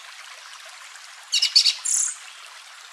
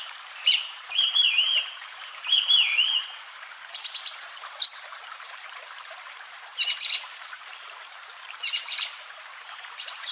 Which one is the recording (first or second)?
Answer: first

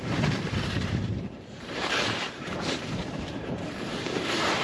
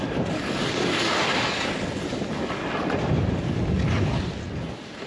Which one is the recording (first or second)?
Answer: second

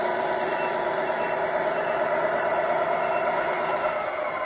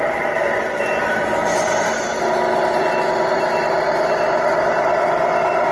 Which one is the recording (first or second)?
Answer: second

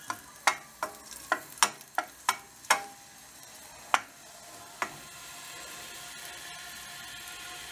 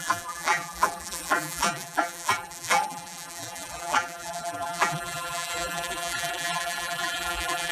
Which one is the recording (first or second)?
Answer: first